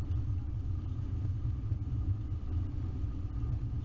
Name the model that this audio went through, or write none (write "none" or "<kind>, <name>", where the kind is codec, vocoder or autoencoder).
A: none